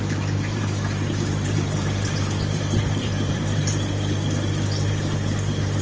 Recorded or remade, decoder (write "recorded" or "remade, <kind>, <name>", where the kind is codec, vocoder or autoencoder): remade, vocoder, BigVGAN v2